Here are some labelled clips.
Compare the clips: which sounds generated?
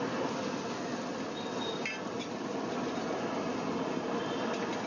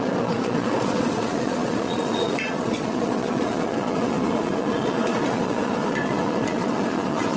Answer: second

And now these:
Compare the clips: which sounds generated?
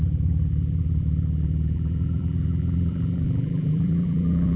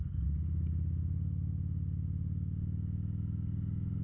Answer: first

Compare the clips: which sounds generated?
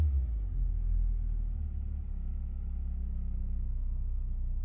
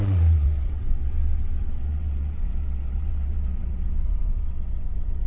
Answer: second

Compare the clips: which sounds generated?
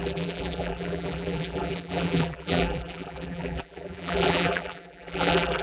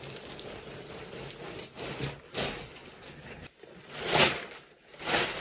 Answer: first